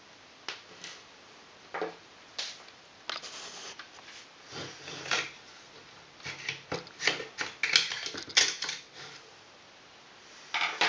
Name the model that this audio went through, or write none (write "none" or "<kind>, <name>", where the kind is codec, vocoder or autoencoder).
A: none